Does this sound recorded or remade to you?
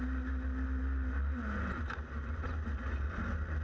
recorded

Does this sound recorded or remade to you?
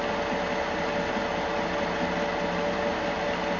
recorded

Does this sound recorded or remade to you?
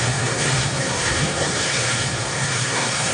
remade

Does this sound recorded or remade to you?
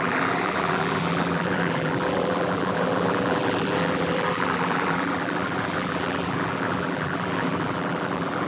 remade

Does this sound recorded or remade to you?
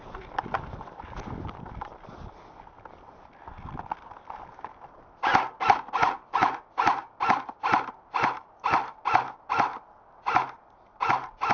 recorded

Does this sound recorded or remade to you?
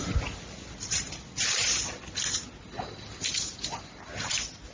recorded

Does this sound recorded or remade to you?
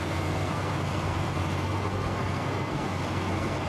remade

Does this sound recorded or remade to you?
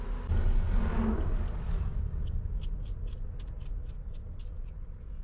recorded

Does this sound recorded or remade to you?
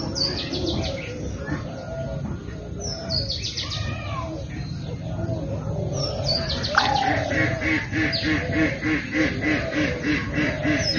recorded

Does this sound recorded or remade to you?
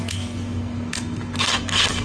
remade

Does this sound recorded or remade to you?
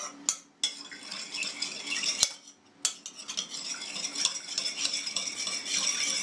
recorded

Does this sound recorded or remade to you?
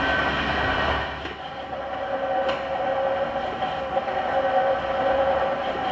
recorded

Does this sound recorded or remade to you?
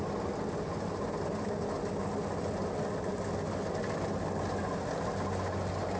recorded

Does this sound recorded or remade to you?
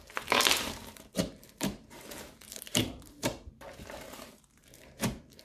remade